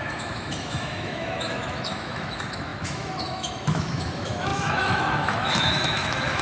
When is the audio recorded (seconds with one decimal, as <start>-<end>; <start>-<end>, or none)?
none